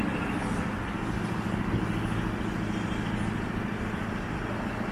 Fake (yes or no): no